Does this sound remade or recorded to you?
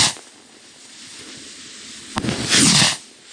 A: recorded